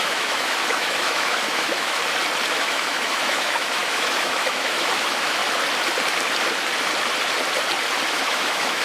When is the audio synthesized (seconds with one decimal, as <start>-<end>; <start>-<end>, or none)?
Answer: 0.0-2.0; 2.6-5.4; 8.0-8.8